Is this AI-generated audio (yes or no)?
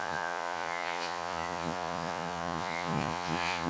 yes